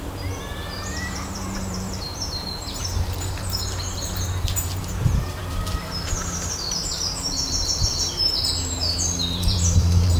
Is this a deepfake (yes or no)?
yes